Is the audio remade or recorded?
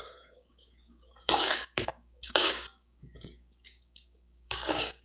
remade